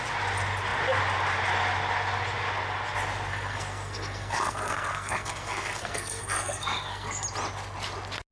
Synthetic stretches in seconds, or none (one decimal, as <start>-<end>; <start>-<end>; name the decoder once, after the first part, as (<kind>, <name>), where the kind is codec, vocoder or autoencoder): 3.3-7.2 (codec, SNAC)